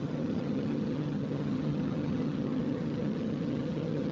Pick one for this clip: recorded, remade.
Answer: remade